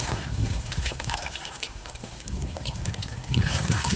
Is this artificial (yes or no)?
yes